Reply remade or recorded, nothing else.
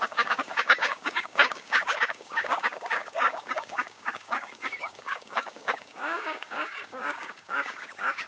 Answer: remade